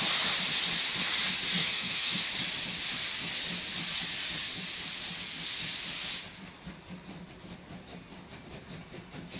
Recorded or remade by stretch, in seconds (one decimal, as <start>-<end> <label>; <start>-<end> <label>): 0.0-1.6 recorded; 1.6-2.2 remade; 2.2-9.4 recorded